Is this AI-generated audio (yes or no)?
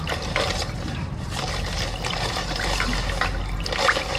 no